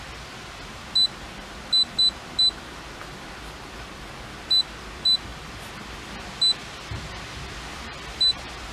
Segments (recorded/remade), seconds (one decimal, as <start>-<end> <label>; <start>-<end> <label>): 0.0-8.7 recorded